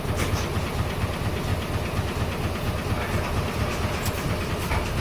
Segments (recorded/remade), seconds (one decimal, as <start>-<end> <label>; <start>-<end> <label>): 0.0-5.0 recorded